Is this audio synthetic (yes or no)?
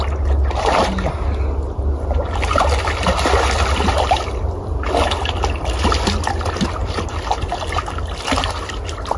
no